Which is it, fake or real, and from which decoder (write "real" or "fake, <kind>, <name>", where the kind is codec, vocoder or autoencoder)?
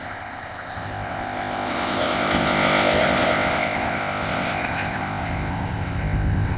fake, codec, ZipCodec